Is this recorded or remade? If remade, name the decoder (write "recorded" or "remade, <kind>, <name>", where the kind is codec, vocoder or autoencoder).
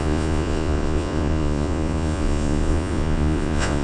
remade, vocoder, Vocos